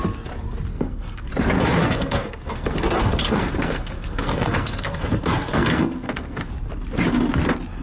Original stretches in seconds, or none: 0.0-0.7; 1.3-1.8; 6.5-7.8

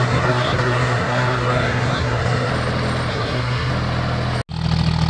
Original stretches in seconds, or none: 2.5-3.1; 3.7-5.1